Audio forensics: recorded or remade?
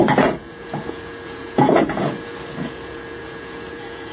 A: remade